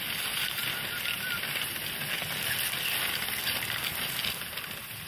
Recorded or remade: recorded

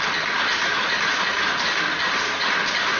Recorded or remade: recorded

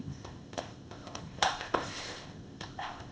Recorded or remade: remade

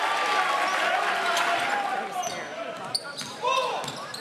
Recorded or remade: recorded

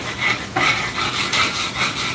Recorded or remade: recorded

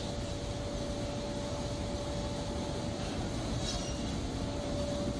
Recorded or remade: recorded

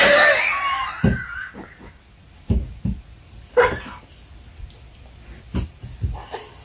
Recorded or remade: recorded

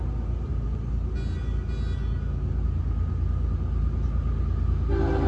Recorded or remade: recorded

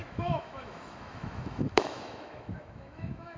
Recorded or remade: remade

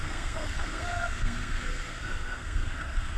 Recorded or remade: remade